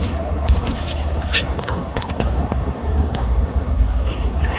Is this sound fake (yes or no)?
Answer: yes